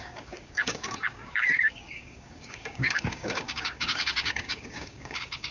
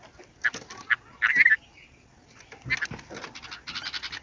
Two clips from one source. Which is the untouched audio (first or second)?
second